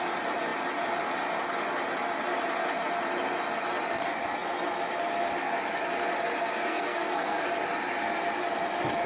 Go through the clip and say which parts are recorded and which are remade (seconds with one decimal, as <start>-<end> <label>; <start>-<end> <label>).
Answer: 0.0-6.6 recorded; 6.6-7.4 remade; 7.4-9.1 recorded

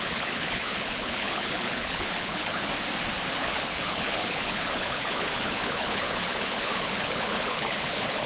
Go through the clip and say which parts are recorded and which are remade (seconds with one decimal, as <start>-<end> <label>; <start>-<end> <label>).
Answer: 0.0-2.7 remade; 2.7-3.3 recorded; 3.3-8.3 remade